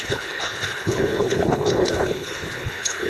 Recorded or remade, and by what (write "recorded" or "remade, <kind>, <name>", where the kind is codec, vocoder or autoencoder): remade, codec, HILCodec